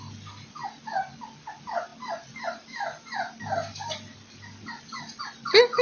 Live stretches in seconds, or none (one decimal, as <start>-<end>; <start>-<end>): 0.0-5.8